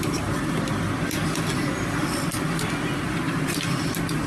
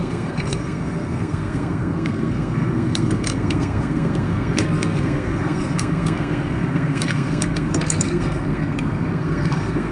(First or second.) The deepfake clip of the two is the second